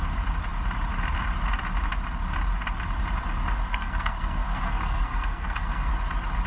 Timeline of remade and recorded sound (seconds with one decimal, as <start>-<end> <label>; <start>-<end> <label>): 0.0-3.7 recorded; 3.7-5.9 remade; 5.9-6.5 recorded